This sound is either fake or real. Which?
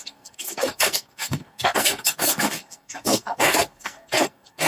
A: fake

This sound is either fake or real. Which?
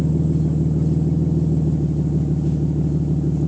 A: real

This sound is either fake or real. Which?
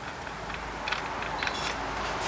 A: real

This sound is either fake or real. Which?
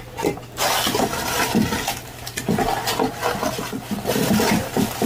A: real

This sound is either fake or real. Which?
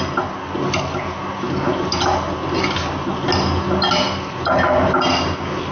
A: real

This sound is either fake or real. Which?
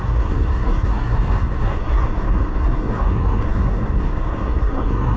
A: fake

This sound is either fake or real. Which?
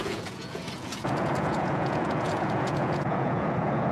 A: fake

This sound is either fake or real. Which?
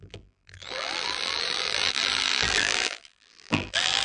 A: fake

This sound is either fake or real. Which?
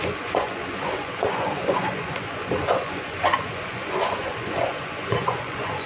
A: fake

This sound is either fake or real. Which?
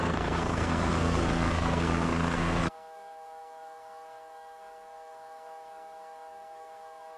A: fake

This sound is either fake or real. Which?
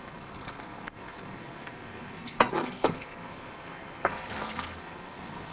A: fake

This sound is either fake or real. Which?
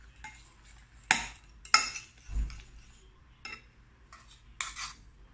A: real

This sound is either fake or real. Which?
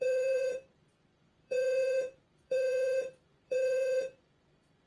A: fake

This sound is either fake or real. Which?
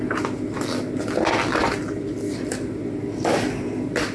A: real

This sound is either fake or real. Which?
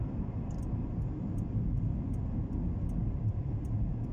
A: real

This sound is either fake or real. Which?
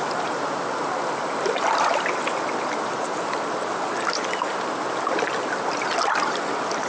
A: real